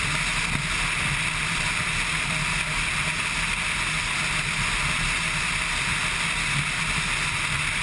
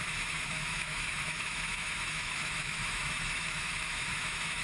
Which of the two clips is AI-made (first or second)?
second